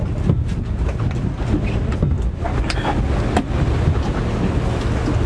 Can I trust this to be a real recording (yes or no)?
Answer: yes